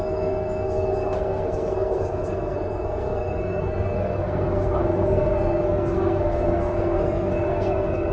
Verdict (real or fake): fake